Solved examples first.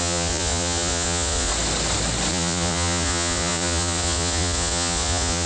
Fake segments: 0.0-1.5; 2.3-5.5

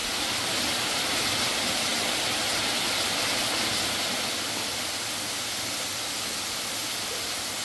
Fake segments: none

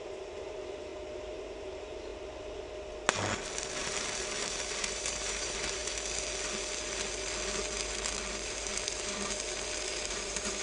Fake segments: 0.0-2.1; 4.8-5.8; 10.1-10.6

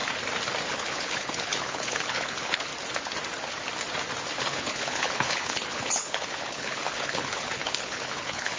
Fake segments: 0.7-2.7; 4.4-8.6

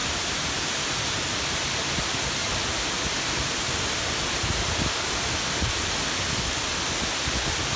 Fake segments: 0.0-0.8; 2.4-6.8

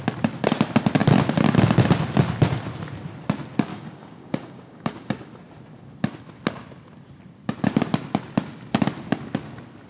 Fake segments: 3.7-5.1

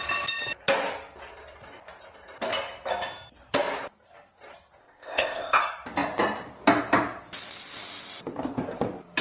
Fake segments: 4.8-5.6

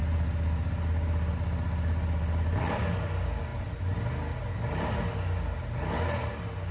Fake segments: none